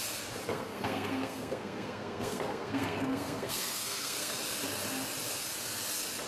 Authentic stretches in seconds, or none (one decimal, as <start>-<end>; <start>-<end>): 0.0-0.5; 4.3-6.3